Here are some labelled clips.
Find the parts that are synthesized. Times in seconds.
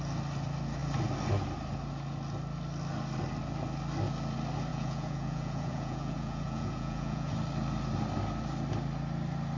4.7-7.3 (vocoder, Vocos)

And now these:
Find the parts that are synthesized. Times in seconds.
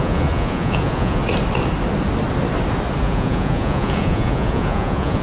0.0-1.2 (vocoder, Vocos); 3.0-5.2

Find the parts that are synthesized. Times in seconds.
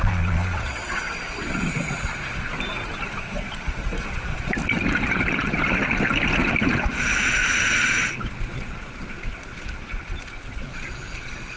0.0-0.8 (vocoder, Vocos); 1.5-2.5; 3.2-4.6; 7.0-7.4; 8.1-11.6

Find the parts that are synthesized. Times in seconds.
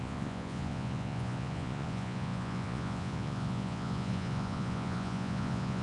0.0-5.8 (vocoder, Vocos)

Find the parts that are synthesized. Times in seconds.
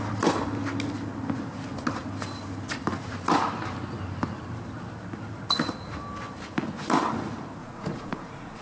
7.6-8.6 (vocoder, Vocos)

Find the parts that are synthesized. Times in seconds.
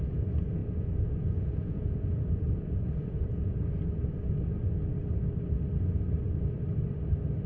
0.6-3.5 (vocoder, Vocos)